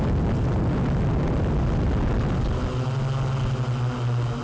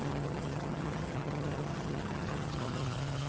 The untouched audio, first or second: first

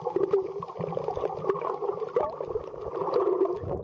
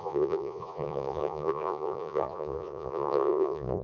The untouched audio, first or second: first